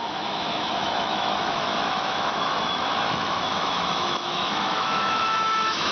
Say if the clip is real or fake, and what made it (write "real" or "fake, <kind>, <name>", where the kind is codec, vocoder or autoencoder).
fake, autoencoder, DAC-VAE